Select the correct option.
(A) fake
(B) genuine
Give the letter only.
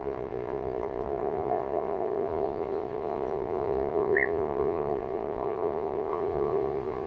A